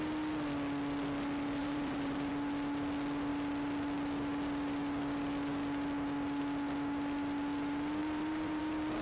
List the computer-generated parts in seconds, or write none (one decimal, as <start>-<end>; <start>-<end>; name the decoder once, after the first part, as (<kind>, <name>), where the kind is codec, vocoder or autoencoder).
1.6-2.3 (vocoder, BigVGAN v2); 8.0-8.6